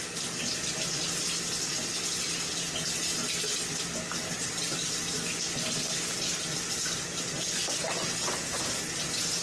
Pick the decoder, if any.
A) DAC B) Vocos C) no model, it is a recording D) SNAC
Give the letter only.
C